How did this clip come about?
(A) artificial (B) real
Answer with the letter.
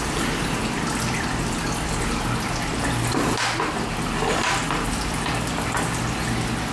B